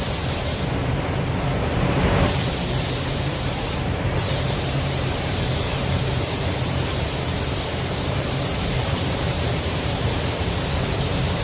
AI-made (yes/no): yes